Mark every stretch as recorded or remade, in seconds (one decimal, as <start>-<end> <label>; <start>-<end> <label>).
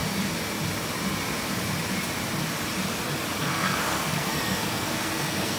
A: 0.0-3.4 recorded; 3.4-5.6 remade